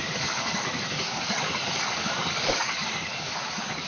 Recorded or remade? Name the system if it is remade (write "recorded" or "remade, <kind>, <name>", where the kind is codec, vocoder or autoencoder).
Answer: remade, codec, DAC